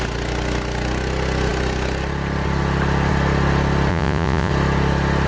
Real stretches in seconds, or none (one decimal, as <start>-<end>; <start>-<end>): 0.0-3.9; 4.5-5.3